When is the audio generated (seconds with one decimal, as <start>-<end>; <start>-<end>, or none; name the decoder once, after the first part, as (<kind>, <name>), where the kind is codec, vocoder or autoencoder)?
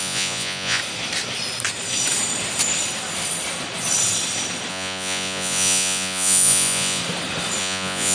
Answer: 0.0-0.8 (vocoder, Vocos); 4.7-7.0; 7.6-8.1